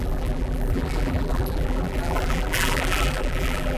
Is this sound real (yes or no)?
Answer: no